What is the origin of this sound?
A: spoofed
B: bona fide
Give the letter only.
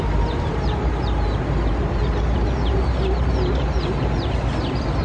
A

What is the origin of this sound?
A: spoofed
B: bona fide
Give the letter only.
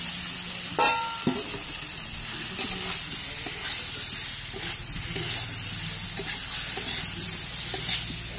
B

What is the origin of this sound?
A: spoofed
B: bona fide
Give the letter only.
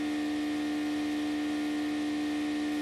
B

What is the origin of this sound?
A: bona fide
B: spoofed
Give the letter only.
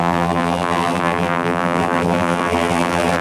B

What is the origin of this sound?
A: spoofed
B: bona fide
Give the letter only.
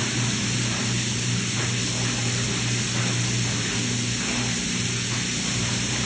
B